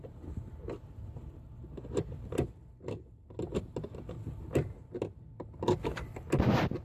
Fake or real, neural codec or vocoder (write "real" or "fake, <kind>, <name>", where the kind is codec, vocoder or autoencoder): real